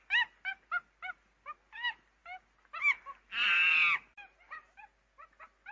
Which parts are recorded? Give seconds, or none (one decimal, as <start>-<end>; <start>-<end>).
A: 0.0-5.7